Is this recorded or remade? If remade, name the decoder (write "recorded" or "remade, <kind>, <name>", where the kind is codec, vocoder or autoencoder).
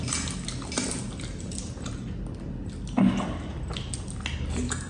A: recorded